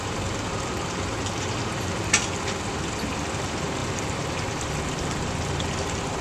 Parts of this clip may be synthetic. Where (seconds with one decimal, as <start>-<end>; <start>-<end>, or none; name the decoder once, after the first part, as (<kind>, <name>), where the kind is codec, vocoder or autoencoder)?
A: none

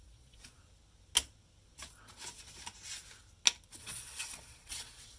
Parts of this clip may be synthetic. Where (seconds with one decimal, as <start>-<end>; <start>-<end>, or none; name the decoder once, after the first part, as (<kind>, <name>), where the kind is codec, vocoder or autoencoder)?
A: 0.0-0.6 (vocoder, Vocos); 3.7-5.2

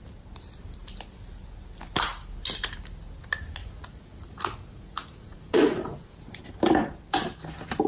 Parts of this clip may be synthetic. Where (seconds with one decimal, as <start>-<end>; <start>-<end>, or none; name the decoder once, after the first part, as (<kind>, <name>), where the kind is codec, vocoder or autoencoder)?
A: 3.6-6.3 (vocoder, Vocos)

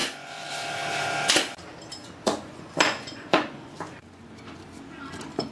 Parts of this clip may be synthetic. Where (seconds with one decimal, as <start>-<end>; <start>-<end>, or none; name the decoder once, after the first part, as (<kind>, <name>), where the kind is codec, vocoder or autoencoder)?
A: 0.0-0.5 (vocoder, Vocos); 2.0-4.3

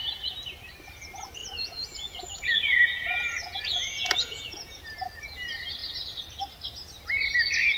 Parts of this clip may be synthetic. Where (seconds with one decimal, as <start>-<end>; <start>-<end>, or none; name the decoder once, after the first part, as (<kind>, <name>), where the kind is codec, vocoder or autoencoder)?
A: 1.4-4.8 (vocoder, Vocos)

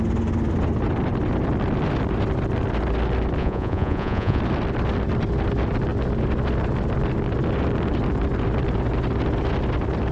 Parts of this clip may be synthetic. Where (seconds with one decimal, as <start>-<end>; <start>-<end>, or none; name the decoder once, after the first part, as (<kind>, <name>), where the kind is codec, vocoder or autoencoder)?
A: 3.4-4.4 (vocoder, Vocos)

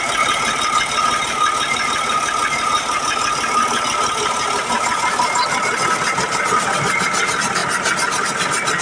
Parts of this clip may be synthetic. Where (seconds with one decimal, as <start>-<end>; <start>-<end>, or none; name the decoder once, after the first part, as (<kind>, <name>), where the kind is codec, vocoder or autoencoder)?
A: none

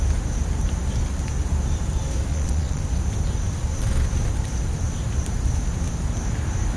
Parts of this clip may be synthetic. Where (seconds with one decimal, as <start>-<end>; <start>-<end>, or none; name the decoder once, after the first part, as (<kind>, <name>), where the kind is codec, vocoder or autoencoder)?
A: 2.3-2.8 (vocoder, Vocos)